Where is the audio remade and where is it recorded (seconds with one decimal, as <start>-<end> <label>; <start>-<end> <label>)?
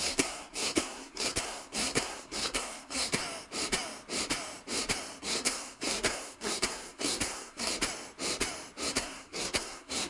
0.0-3.2 remade; 3.2-5.2 recorded; 5.2-7.7 remade; 7.7-8.9 recorded; 8.9-10.1 remade